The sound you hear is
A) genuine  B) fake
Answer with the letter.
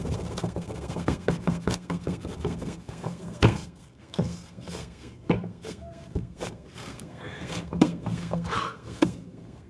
B